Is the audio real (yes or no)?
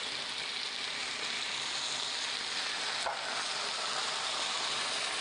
yes